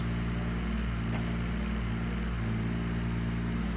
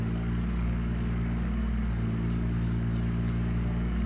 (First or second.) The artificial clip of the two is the second